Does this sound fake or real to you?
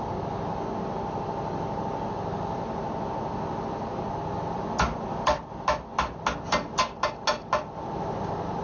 real